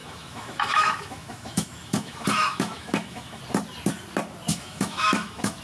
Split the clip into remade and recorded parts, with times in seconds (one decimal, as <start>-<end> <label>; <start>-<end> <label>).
0.0-3.4 remade; 3.4-4.5 recorded; 4.5-5.6 remade